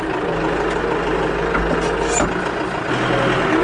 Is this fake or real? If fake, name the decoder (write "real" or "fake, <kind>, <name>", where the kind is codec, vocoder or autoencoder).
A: real